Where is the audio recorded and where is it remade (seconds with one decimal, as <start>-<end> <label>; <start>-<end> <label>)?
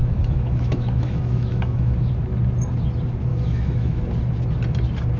0.0-2.1 remade; 2.1-3.3 recorded; 3.3-4.0 remade; 4.0-5.2 recorded